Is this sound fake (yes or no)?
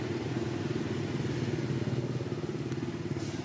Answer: no